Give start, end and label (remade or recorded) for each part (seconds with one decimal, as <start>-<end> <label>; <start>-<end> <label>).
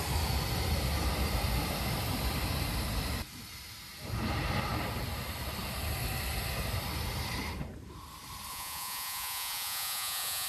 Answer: 0.0-8.5 recorded; 8.5-10.5 remade